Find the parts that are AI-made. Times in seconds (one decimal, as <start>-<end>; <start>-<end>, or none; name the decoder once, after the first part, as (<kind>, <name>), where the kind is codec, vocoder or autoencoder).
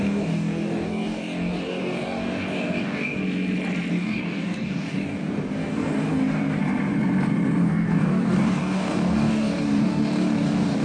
0.0-3.2 (codec, DAC); 3.9-6.6; 7.6-10.8